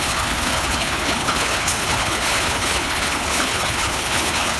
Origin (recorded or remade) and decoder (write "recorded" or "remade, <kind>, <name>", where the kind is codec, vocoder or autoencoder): remade, codec, HILCodec